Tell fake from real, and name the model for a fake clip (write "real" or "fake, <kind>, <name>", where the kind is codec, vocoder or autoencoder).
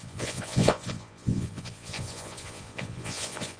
fake, vocoder, Vocos